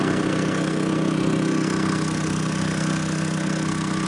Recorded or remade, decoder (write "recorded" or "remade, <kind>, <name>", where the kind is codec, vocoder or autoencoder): remade, codec, SNAC